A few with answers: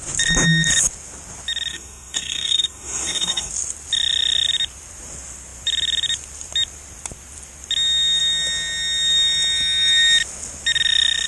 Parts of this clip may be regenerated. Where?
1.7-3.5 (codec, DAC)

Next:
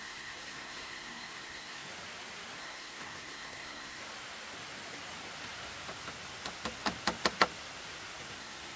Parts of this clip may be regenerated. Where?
0.0-1.9 (codec, SNAC); 2.6-4.0; 8.4-8.8

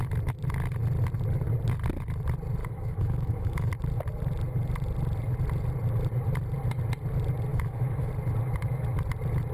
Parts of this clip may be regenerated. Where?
2.6-3.7 (autoencoder, DAC-VAE); 7.5-8.1

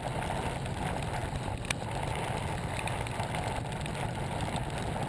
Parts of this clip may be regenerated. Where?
none

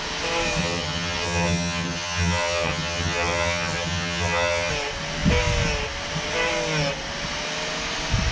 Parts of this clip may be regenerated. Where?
0.6-4.7 (vocoder, HiFi-GAN)